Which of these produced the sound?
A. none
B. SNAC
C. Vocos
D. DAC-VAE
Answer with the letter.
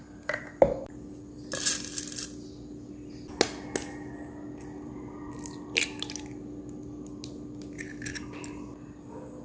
A